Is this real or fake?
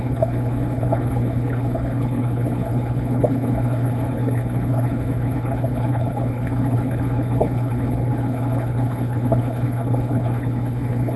fake